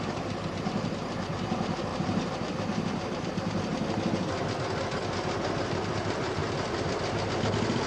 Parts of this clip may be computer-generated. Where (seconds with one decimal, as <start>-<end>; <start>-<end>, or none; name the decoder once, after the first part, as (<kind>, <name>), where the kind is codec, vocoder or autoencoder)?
0.0-3.7 (vocoder, BigVGAN v2); 6.0-6.4